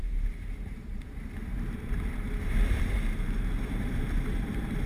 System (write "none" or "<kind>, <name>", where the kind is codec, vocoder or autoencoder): vocoder, BigVGAN v2